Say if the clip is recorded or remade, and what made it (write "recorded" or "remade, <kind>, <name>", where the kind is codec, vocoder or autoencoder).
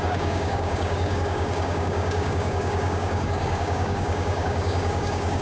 remade, codec, DAC